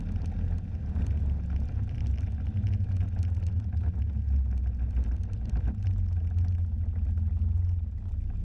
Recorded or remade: recorded